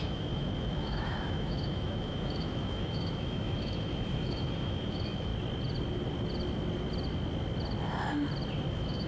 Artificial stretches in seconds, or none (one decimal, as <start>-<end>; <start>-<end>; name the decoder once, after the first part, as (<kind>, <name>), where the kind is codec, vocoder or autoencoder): 0.0-5.3 (autoencoder, DAC-VAE); 8.7-9.1